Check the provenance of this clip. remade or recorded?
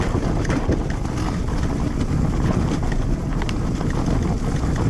recorded